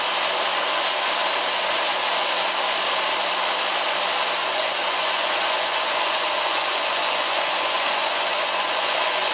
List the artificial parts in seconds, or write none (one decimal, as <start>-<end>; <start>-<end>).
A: 0.5-1.1; 4.4-9.3